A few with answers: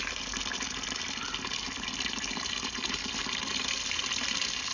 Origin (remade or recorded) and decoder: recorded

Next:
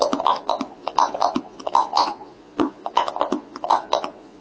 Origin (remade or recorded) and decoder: remade, vocoder, Vocos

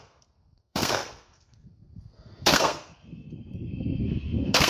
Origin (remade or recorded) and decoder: remade, codec, SNAC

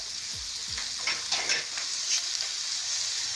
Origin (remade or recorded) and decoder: recorded